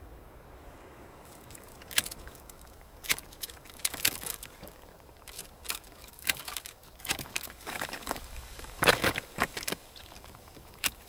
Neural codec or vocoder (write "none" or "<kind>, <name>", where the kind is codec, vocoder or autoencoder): codec, DAC